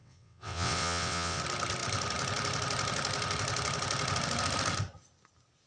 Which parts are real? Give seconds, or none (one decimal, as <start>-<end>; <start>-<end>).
1.4-5.7